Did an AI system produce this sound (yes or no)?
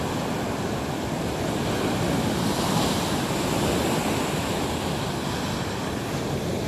no